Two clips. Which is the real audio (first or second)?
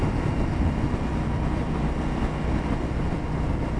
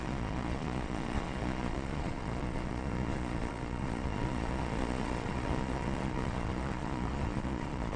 first